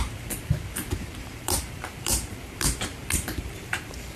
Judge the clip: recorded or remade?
remade